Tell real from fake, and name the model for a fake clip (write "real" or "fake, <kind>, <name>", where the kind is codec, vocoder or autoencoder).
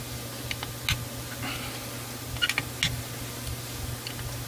real